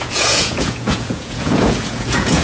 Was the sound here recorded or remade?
remade